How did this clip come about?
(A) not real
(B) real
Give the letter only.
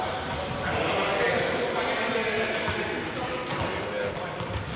B